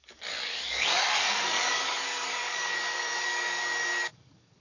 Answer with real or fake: fake